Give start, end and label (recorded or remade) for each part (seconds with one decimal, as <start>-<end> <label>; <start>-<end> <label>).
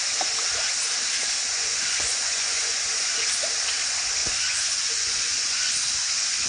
0.0-1.5 recorded; 1.5-3.2 remade; 3.2-4.2 recorded; 4.2-5.7 remade; 5.7-6.5 recorded